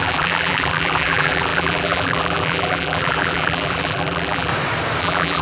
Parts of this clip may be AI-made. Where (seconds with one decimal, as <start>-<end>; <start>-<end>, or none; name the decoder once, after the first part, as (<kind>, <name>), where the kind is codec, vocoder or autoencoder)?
0.0-4.5 (vocoder, BigVGAN v2); 5.0-5.4